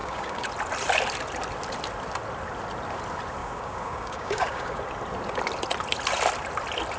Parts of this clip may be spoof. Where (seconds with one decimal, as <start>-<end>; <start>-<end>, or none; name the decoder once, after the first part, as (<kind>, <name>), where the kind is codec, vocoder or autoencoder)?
0.0-0.5 (codec, DAC); 3.4-4.8